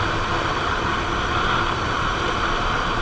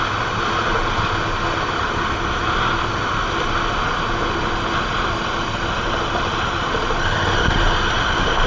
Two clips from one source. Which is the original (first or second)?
second